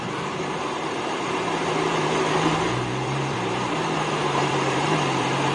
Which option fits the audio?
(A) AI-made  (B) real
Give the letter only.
A